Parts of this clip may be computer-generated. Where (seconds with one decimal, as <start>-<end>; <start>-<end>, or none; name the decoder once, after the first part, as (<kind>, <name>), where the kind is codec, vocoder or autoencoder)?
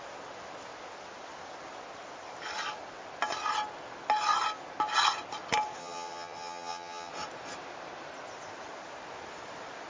5.8-7.1 (vocoder, HiFi-GAN)